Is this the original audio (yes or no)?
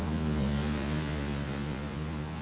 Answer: no